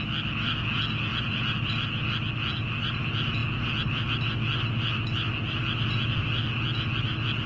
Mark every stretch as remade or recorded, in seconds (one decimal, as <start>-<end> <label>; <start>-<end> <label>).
0.0-1.1 recorded; 1.1-1.9 remade; 1.9-7.5 recorded